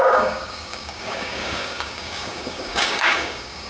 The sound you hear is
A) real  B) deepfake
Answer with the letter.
B